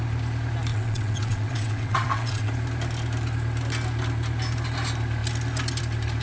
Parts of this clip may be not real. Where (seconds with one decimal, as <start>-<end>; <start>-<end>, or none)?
0.7-2.5